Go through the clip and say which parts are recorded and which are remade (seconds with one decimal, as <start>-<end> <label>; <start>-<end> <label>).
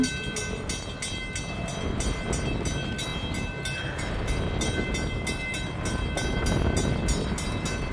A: 0.0-7.9 recorded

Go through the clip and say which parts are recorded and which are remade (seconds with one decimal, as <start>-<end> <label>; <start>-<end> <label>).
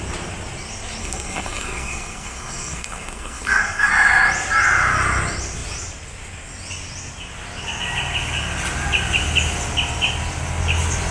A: 0.0-1.0 recorded; 1.0-3.9 remade; 3.9-11.1 recorded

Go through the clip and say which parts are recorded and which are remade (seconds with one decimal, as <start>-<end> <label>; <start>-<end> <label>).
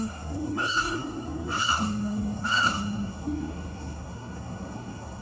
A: 0.0-5.2 remade